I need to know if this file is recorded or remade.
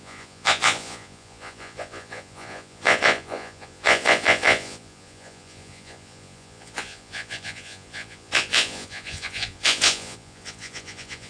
remade